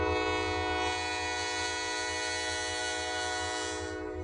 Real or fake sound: real